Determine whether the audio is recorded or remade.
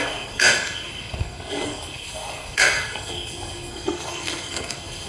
remade